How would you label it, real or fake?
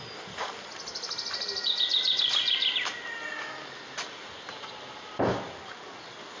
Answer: real